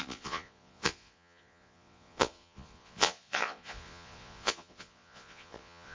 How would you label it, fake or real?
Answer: fake